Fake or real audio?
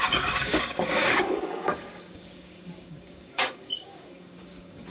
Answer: fake